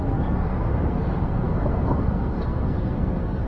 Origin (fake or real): fake